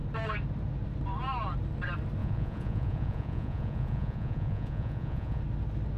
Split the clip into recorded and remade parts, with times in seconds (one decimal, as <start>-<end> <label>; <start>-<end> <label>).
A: 0.0-2.2 recorded; 2.2-5.4 remade; 5.4-6.0 recorded